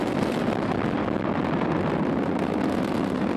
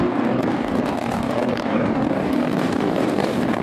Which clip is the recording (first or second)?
first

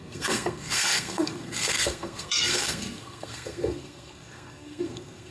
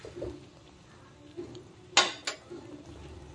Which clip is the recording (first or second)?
second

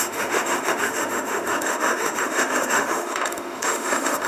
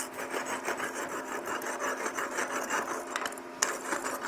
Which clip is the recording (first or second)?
second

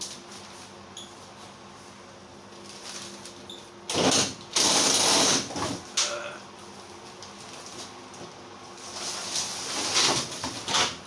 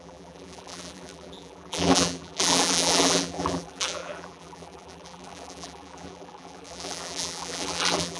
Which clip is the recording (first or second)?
first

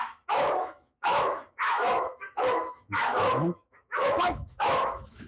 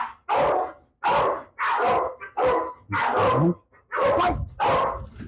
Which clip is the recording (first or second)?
second